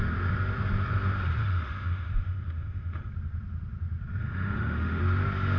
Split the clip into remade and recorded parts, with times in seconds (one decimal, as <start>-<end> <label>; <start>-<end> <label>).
0.0-1.4 recorded; 1.4-3.1 remade; 3.1-4.2 recorded; 4.2-5.0 remade; 5.0-5.6 recorded